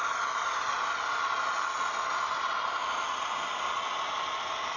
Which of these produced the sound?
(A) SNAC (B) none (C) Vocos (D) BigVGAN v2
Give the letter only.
B